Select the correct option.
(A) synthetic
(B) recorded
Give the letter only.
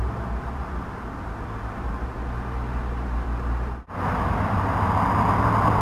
B